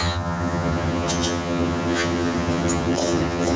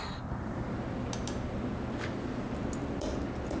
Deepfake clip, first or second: first